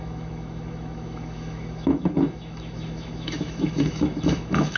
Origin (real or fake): fake